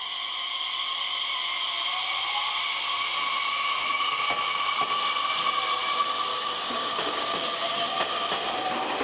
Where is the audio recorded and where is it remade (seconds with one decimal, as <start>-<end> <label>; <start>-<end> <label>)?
0.0-6.3 recorded; 6.3-7.9 remade; 7.9-9.0 recorded